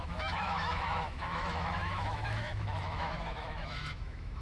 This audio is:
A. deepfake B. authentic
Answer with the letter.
A